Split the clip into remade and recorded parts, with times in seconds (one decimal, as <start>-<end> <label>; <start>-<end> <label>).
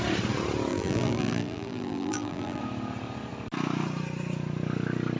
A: 0.0-0.7 recorded; 0.7-2.6 remade; 2.6-5.2 recorded